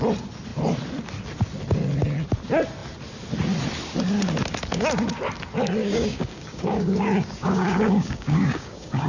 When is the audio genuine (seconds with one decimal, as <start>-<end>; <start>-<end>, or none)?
0.0-5.8